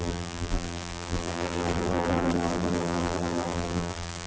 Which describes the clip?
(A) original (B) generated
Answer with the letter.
B